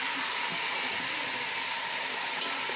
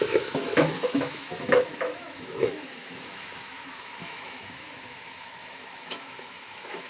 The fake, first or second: second